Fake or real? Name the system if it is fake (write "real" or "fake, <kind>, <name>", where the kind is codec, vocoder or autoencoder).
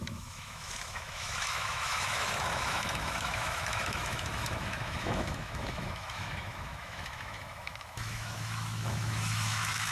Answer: fake, autoencoder, DAC-VAE